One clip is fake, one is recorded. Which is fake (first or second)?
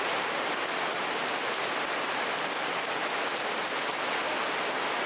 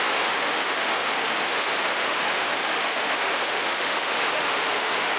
second